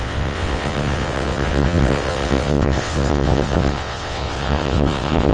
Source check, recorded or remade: remade